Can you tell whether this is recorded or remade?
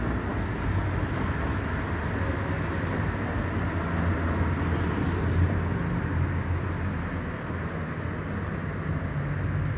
recorded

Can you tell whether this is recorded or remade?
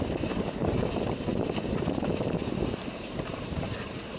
remade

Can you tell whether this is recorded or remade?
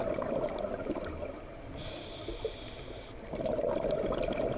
recorded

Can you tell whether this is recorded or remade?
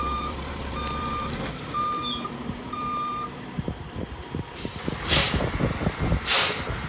remade